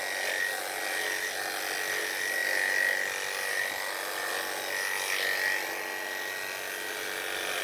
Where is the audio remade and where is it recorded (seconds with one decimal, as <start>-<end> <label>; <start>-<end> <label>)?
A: 0.0-7.6 recorded